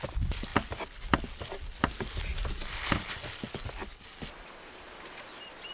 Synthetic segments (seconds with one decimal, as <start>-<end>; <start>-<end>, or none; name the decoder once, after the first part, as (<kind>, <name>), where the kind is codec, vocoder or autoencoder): none